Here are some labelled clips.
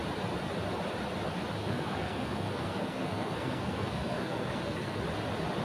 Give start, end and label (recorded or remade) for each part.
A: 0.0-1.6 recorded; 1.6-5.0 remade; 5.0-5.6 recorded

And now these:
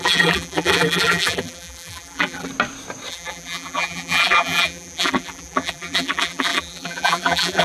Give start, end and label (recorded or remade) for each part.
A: 0.0-2.5 remade; 2.5-3.1 recorded; 3.1-7.6 remade

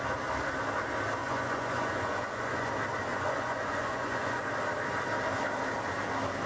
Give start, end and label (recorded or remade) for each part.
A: 0.0-1.2 recorded; 1.2-2.7 remade; 2.7-3.1 recorded; 3.1-4.5 remade; 4.5-6.5 recorded

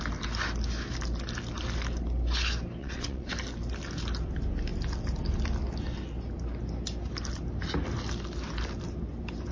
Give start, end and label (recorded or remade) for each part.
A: 0.0-2.8 recorded; 2.8-3.3 remade; 3.3-9.5 recorded

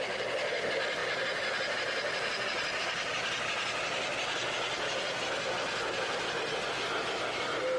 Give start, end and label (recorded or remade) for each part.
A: 0.0-7.8 recorded

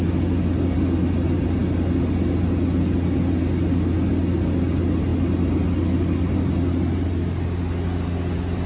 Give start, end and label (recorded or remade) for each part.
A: 0.0-8.7 recorded

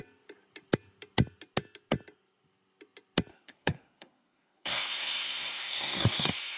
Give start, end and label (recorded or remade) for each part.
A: 0.0-3.3 recorded; 3.3-6.6 remade